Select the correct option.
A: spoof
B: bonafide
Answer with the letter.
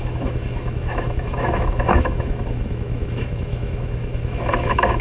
A